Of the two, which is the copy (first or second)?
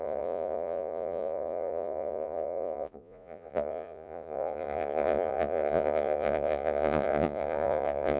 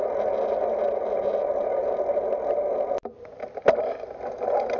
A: first